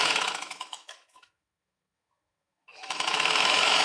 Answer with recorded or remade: remade